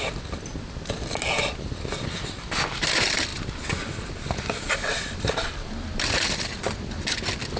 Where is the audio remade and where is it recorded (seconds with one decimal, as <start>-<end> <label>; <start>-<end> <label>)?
0.0-7.6 remade